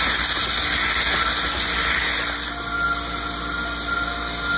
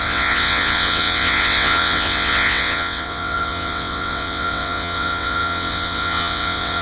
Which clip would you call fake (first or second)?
second